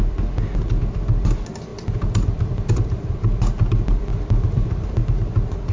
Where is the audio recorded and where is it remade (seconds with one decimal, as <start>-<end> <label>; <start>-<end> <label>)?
0.0-1.7 recorded; 1.7-3.1 remade; 3.1-4.1 recorded; 4.1-5.0 remade; 5.0-5.7 recorded